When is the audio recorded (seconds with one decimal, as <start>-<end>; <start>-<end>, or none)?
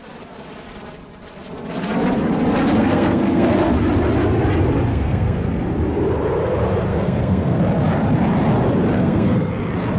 0.0-2.8; 3.7-4.9; 5.4-6.9; 7.6-8.9; 9.5-10.0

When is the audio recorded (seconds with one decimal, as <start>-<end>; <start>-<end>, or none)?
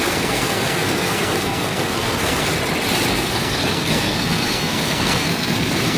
2.5-3.1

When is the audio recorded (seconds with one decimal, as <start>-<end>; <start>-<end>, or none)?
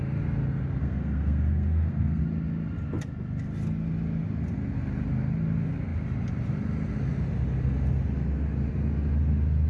0.0-0.8; 2.2-9.7